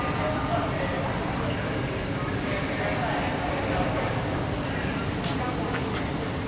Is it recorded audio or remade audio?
recorded